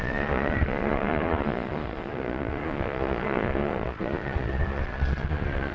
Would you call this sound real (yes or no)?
no